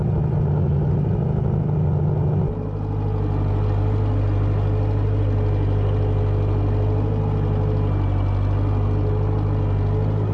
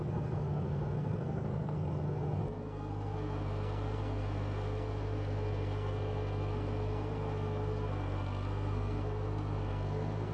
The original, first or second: first